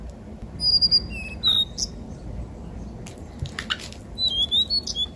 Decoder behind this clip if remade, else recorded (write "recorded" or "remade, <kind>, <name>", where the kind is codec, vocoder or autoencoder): recorded